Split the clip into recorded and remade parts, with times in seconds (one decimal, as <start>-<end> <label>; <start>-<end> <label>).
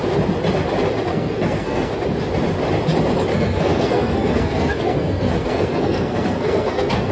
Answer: 0.0-1.1 recorded; 1.1-1.9 remade; 1.9-3.3 recorded; 3.3-7.1 remade